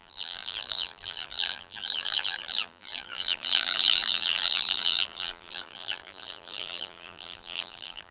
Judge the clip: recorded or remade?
remade